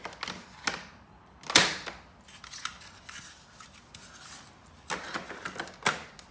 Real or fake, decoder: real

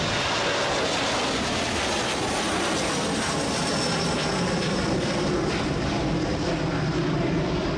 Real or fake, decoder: real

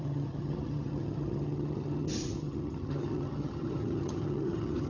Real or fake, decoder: fake, vocoder, HiFi-GAN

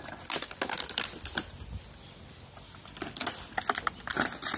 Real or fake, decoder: real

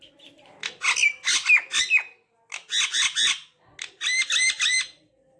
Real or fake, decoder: real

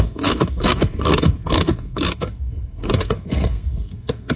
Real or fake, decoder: fake, codec, SNAC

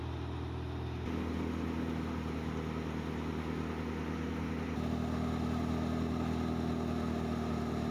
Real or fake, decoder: real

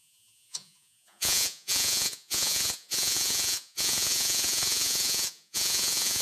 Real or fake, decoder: fake, vocoder, Vocos